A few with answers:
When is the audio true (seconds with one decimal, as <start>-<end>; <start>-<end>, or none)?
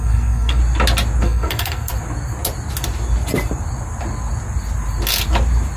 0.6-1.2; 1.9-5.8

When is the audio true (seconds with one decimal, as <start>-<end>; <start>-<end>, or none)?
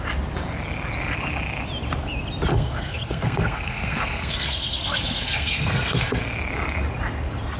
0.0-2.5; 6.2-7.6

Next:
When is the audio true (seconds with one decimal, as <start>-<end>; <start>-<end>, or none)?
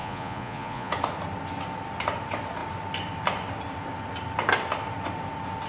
0.9-5.7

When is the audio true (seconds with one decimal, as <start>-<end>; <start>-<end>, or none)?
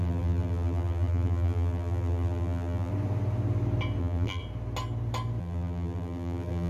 2.9-4.0; 4.4-5.4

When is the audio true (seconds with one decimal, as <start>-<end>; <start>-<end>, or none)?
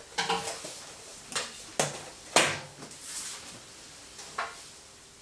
0.0-5.2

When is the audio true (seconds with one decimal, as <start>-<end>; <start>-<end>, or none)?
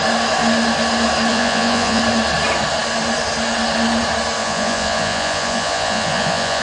0.0-1.3; 2.0-4.4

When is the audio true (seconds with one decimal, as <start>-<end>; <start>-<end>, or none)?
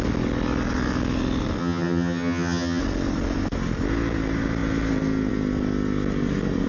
0.0-1.6; 2.8-6.7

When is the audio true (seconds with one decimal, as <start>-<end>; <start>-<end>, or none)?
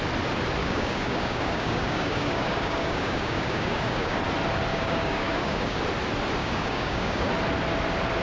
0.0-0.6; 4.2-4.7; 5.8-6.4; 7.3-8.2